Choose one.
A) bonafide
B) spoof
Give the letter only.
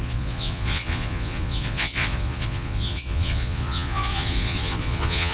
B